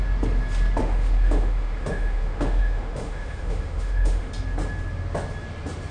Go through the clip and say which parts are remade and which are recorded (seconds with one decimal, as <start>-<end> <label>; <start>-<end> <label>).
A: 0.0-0.8 recorded; 0.8-4.3 remade; 4.3-5.9 recorded